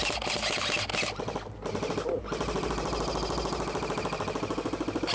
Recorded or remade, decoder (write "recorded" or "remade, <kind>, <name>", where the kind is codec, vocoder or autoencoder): recorded